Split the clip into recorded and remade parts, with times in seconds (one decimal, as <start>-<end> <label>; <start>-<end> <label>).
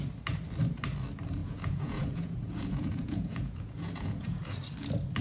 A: 0.0-1.4 recorded; 1.4-4.5 remade; 4.5-5.2 recorded